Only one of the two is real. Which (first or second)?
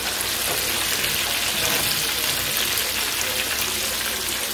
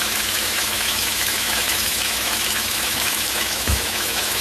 first